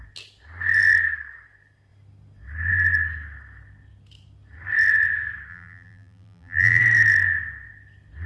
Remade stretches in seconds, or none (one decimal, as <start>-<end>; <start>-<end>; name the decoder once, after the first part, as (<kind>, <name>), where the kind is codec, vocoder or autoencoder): 5.5-6.8 (vocoder, BigVGAN v2)